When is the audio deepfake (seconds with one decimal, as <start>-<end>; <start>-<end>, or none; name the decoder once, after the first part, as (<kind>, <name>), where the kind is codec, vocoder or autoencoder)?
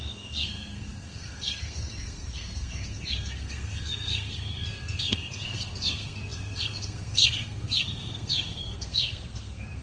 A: 0.0-9.8 (codec, SNAC)